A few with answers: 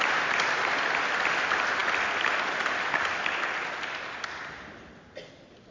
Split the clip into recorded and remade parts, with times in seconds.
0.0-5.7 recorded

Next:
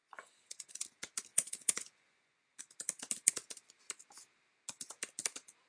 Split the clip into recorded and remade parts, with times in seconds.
0.0-0.7 remade; 0.7-1.3 recorded; 1.3-2.6 remade; 2.6-5.7 recorded

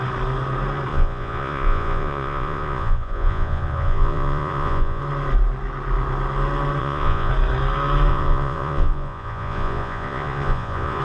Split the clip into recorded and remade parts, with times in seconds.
0.0-0.9 recorded; 0.9-5.0 remade; 5.0-6.8 recorded; 6.8-7.3 remade; 7.3-8.1 recorded; 8.1-11.0 remade